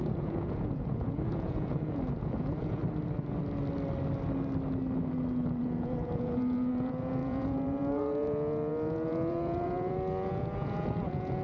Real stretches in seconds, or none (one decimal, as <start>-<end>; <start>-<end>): 2.8-5.6